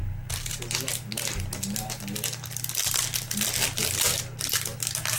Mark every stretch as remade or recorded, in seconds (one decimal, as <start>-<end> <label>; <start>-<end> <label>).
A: 0.0-0.6 remade; 0.6-5.2 recorded